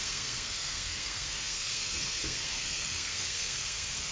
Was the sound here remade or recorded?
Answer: remade